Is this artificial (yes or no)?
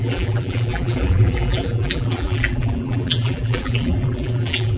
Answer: yes